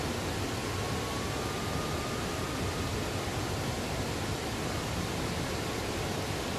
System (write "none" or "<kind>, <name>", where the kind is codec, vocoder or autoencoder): none